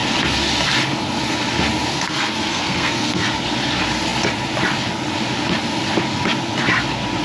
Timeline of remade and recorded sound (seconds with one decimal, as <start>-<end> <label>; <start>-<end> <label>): 0.0-1.9 recorded; 1.9-3.3 remade; 3.3-7.2 recorded

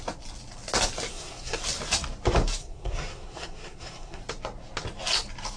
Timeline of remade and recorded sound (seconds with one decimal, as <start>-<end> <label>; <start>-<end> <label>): 0.0-1.1 recorded; 1.1-1.6 remade; 1.6-2.6 recorded; 2.6-4.2 remade; 4.2-5.6 recorded

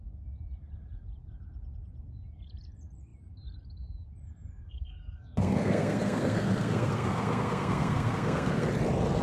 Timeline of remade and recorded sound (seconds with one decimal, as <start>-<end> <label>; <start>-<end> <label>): 0.0-4.5 recorded; 4.5-8.7 remade; 8.7-9.2 recorded

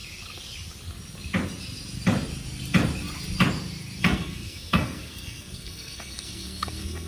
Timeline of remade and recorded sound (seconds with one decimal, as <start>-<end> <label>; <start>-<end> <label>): 0.0-4.0 recorded; 4.0-7.1 remade

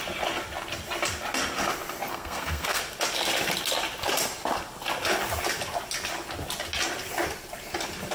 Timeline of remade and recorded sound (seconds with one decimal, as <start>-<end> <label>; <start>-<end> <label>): 0.0-2.1 recorded; 2.1-2.8 remade; 2.8-8.1 recorded

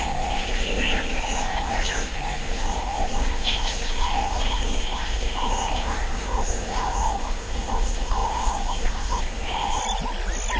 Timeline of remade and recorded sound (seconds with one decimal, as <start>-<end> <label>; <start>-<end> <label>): 0.0-9.8 remade; 9.8-10.6 recorded

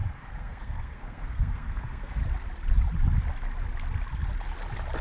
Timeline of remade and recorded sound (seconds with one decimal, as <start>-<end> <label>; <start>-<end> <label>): 0.0-2.2 remade; 2.2-5.0 recorded